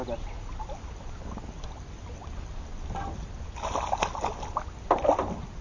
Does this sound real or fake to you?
real